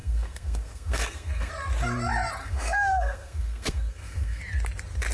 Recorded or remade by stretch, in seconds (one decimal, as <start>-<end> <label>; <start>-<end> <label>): 0.0-1.5 remade; 1.5-2.4 recorded; 2.4-4.4 remade; 4.4-5.1 recorded